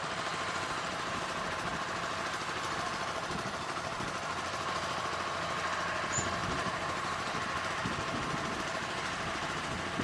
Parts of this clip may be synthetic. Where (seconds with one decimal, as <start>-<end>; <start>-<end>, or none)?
6.4-7.7